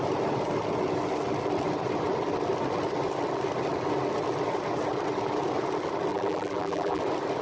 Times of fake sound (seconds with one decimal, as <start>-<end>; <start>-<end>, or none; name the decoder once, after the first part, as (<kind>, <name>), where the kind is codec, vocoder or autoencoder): 6.1-7.0 (vocoder, BigVGAN v2)